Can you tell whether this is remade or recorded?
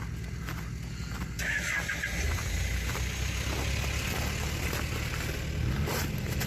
recorded